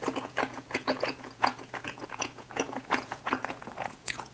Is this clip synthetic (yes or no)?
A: yes